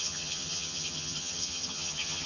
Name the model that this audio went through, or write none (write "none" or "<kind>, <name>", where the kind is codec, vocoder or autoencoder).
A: vocoder, HiFi-GAN